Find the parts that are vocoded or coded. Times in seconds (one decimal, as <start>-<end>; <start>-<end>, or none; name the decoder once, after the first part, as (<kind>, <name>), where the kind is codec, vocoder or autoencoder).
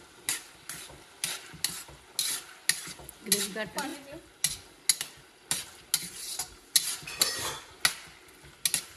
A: none